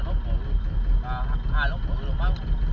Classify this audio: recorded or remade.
recorded